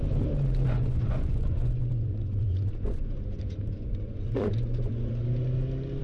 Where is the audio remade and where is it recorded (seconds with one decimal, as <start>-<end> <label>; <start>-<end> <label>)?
0.0-0.7 recorded; 0.7-5.2 remade; 5.2-6.0 recorded

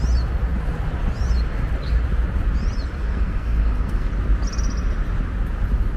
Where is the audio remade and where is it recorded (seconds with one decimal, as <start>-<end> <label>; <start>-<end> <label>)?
0.0-3.0 recorded; 3.0-4.1 remade; 4.1-6.0 recorded

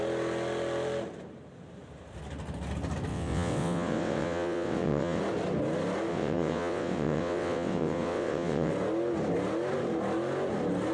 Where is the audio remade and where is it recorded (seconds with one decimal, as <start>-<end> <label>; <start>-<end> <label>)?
0.0-3.1 recorded; 3.1-5.2 remade; 5.2-6.1 recorded; 6.1-8.7 remade; 8.7-10.9 recorded